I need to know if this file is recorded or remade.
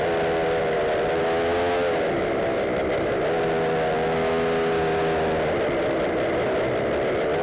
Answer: recorded